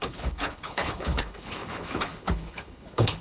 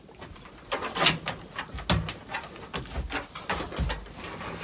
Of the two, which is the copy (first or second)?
first